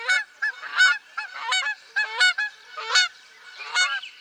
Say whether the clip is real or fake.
fake